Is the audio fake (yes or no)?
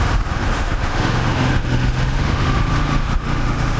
yes